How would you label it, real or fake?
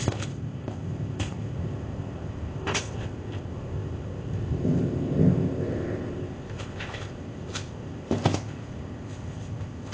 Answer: fake